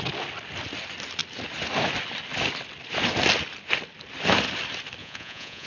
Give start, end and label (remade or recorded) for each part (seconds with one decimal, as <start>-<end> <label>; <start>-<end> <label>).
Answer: 0.0-5.0 recorded; 5.0-5.7 remade